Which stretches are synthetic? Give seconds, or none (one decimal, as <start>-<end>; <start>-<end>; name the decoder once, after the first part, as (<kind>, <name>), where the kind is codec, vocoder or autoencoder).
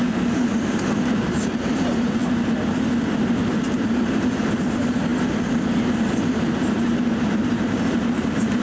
0.0-2.2 (vocoder, BigVGAN v2); 4.0-5.1; 6.2-8.6